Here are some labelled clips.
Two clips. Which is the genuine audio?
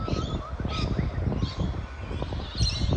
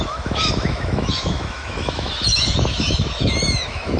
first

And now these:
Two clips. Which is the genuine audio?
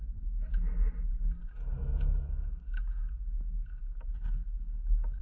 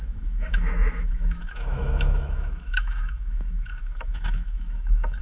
first